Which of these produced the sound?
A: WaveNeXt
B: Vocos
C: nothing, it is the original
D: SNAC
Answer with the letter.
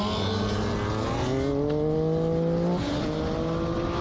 C